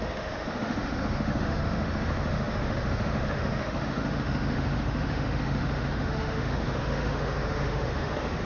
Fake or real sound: fake